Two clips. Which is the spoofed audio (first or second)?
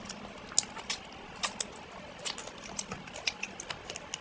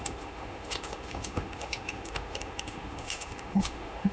second